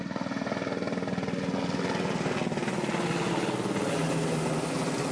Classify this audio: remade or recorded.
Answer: recorded